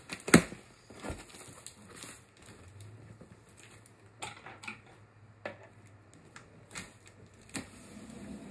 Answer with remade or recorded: recorded